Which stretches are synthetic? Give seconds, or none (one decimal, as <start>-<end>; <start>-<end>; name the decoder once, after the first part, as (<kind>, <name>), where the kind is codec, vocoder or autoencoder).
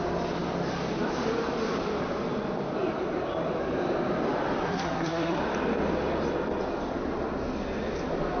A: 4.6-5.4 (codec, SNAC)